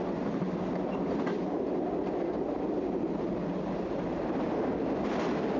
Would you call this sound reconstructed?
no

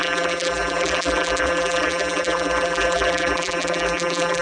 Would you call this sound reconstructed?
yes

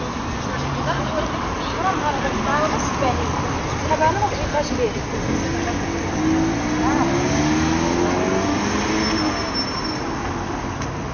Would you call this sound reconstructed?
no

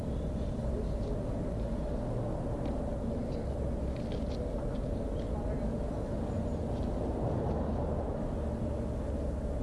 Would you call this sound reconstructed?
no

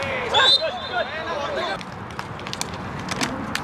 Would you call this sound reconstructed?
no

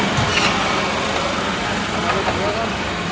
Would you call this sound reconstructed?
no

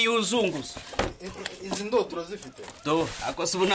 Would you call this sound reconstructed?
no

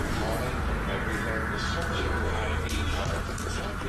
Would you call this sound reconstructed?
no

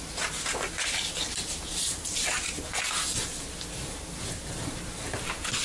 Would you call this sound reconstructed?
no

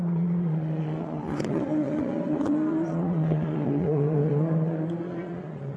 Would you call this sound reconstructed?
yes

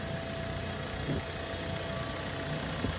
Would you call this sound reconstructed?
no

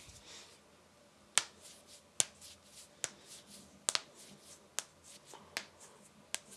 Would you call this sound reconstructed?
no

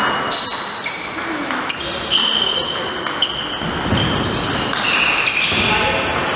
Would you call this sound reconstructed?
no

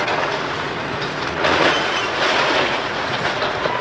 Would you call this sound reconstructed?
yes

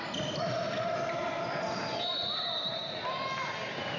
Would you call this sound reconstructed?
no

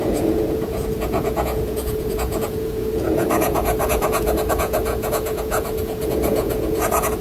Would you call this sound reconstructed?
yes